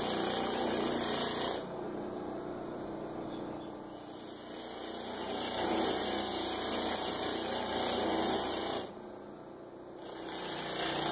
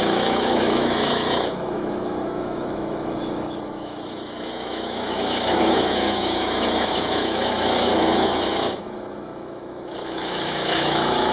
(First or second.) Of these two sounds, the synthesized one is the second